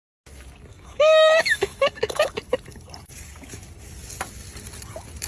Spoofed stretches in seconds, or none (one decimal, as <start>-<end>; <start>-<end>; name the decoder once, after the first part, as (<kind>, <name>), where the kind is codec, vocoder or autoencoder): 0.7-2.4 (autoencoder, DAC-VAE)

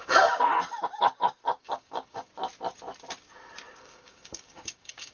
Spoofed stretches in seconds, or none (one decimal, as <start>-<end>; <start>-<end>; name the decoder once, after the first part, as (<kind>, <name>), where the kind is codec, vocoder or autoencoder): 0.0-0.5 (codec, DAC); 1.6-2.3; 3.8-5.1